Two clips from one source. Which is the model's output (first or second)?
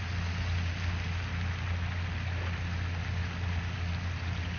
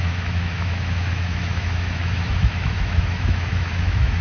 second